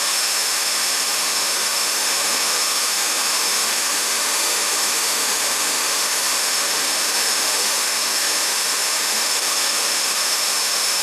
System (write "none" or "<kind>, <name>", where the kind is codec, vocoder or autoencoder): autoencoder, DAC-VAE